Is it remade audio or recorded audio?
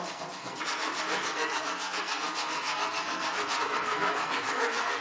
remade